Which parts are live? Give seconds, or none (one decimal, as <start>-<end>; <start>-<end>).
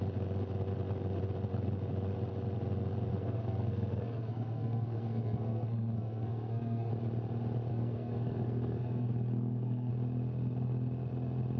0.0-3.1; 6.9-7.7; 9.9-11.6